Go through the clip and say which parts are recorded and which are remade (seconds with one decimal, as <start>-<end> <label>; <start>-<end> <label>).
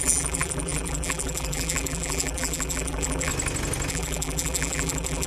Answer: 0.0-3.3 remade; 3.3-3.9 recorded; 3.9-5.3 remade